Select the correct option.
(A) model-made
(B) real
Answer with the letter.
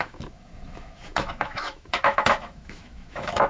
A